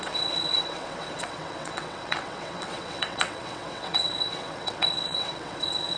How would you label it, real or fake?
fake